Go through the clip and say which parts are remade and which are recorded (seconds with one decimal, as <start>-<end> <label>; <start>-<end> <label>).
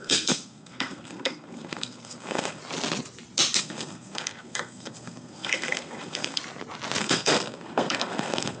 0.0-2.6 remade; 2.6-3.6 recorded; 3.6-6.4 remade; 6.4-7.0 recorded; 7.0-8.6 remade